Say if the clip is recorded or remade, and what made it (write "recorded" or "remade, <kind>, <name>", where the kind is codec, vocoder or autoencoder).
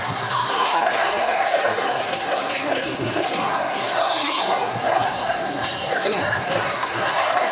remade, codec, SNAC